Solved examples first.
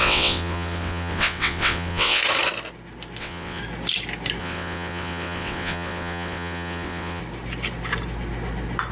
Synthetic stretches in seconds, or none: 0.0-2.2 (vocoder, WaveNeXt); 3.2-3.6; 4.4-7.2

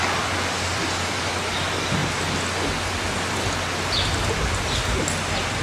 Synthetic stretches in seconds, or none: none

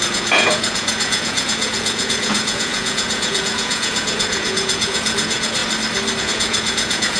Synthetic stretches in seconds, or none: 0.0-5.6 (vocoder, Vocos); 6.2-7.2

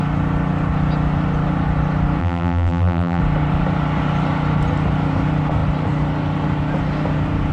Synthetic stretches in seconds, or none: 2.2-3.2 (vocoder, BigVGAN v2)

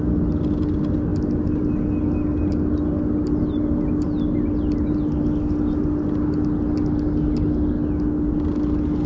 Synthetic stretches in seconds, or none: none

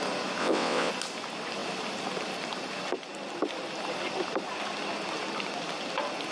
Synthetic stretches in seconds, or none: 0.4-0.9 (vocoder, WaveNeXt)